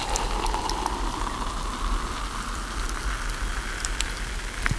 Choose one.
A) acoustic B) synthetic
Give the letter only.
A